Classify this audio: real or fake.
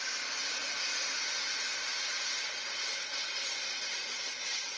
real